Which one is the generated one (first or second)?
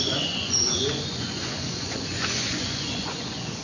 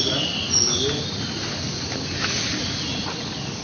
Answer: first